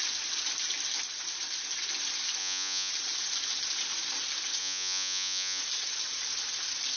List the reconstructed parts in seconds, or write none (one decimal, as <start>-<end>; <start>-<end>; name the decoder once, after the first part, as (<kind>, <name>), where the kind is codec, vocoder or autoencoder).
2.4-2.9 (vocoder, Vocos); 4.6-5.6